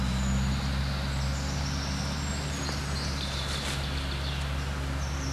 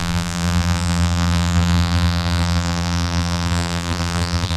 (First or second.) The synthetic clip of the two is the second